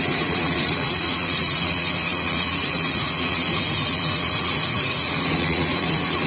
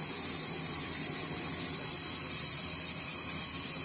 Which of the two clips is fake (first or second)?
first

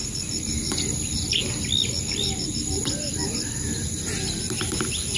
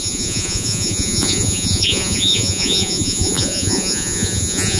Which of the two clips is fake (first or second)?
second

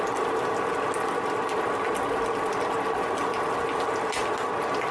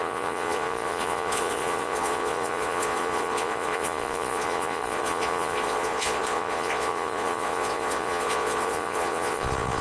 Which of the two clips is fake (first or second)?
second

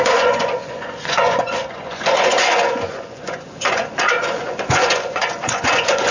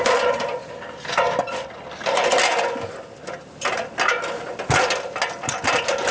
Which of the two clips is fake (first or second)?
first